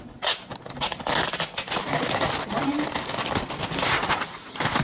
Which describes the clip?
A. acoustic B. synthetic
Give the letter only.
A